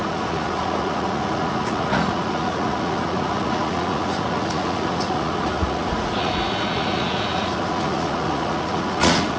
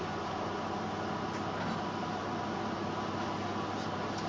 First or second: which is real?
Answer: second